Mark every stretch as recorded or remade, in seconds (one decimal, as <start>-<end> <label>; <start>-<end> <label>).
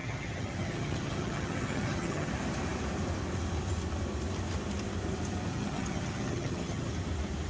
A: 0.0-2.3 remade; 2.3-5.5 recorded; 5.5-6.9 remade; 6.9-7.5 recorded